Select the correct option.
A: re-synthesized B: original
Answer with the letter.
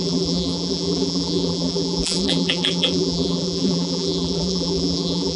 A